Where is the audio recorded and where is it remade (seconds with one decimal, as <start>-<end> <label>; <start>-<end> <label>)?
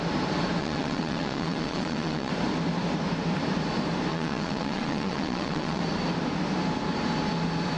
0.0-0.6 recorded; 0.6-2.3 remade; 2.3-4.1 recorded; 4.1-5.8 remade; 5.8-7.8 recorded